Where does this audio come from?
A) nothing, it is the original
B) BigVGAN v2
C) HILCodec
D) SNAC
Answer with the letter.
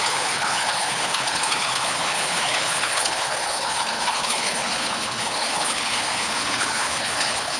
C